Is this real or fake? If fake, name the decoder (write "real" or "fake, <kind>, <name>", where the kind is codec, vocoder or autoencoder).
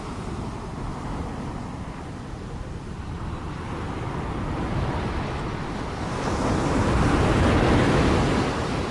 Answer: real